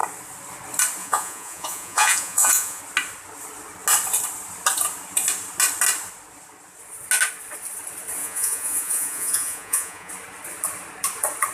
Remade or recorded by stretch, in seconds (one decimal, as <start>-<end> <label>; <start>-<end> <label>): 0.0-1.0 recorded; 1.0-2.8 remade; 2.8-8.2 recorded; 8.2-10.1 remade; 10.1-11.5 recorded